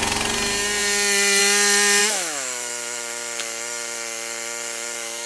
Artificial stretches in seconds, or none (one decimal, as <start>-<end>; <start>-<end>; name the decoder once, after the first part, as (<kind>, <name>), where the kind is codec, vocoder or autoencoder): 2.0-5.3 (autoencoder, DAC-VAE)

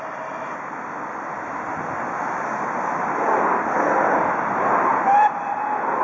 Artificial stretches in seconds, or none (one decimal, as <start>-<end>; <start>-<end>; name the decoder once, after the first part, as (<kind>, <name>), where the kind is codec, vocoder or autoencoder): none

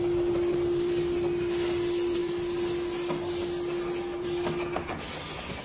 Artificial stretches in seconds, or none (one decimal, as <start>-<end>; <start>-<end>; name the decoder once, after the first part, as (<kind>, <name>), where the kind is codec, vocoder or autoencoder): none

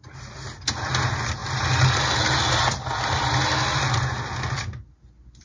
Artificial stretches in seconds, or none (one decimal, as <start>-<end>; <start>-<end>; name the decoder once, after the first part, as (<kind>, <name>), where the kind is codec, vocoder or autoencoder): none

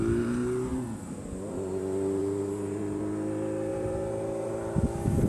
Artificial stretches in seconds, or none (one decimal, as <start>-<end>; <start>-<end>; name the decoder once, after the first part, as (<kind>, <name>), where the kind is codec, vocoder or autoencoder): 2.2-3.0 (vocoder, BigVGAN v2); 3.7-4.5

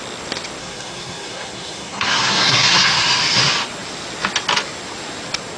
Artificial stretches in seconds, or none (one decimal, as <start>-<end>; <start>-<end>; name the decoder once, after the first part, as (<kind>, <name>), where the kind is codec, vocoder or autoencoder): 0.6-3.0 (codec, SNAC)